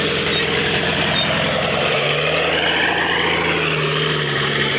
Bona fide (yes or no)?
yes